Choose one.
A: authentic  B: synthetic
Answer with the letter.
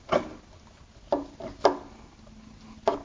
A